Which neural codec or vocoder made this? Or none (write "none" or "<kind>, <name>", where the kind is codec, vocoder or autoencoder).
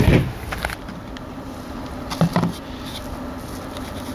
none